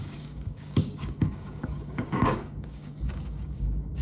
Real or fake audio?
fake